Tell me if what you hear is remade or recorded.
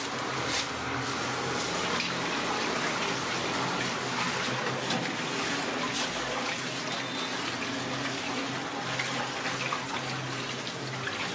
recorded